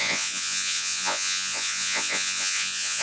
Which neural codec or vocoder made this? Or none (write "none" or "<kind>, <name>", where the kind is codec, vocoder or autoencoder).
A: vocoder, Vocos